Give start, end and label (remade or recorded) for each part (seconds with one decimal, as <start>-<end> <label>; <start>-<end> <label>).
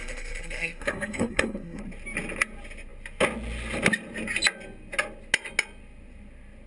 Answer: 0.0-1.8 remade; 1.8-6.7 recorded